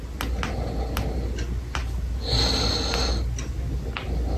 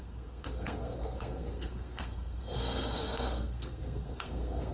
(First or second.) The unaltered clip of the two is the first